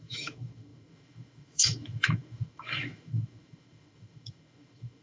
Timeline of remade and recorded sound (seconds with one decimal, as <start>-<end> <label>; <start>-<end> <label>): 0.0-5.0 remade